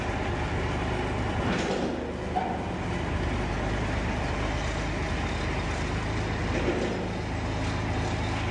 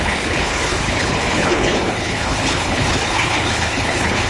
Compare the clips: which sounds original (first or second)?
first